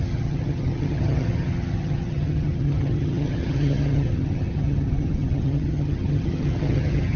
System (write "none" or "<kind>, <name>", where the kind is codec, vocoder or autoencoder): vocoder, HiFi-GAN